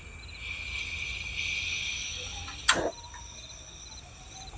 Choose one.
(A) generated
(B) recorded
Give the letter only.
B